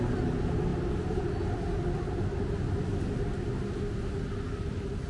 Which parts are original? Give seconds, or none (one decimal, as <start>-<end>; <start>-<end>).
0.0-5.1

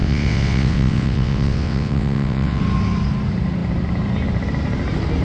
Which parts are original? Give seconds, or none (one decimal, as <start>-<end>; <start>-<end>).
2.6-5.2

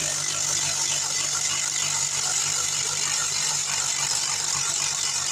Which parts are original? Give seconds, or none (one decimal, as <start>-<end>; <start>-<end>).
0.0-0.9

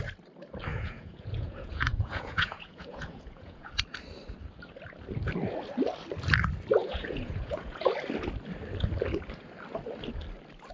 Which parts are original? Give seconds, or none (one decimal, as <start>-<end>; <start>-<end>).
0.0-0.7; 3.7-6.8; 7.9-10.7

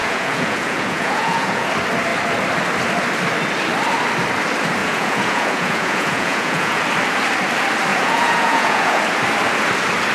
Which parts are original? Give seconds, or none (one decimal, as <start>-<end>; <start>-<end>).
1.7-4.8; 6.8-7.9; 9.0-10.1